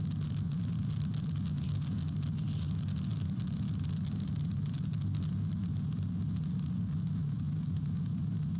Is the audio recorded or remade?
recorded